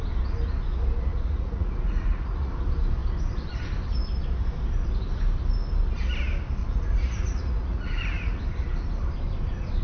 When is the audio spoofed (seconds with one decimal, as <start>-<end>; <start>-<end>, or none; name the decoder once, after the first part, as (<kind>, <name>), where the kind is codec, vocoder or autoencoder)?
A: 1.1-2.5 (vocoder, Vocos); 6.6-8.4